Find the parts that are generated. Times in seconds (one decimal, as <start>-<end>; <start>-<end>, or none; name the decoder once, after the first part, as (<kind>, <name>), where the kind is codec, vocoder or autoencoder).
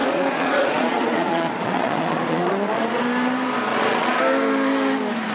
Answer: 0.0-3.0 (vocoder, Vocos); 3.7-4.2